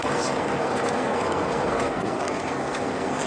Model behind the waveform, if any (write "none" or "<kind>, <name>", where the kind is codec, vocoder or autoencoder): codec, SNAC